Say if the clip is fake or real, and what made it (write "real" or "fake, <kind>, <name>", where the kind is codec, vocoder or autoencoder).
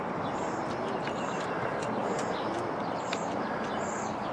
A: real